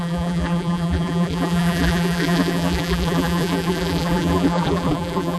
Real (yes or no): no